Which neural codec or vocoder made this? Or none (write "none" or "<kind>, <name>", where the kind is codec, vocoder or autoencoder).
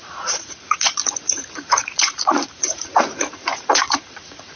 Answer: vocoder, Vocos